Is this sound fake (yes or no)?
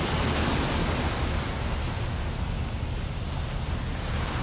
no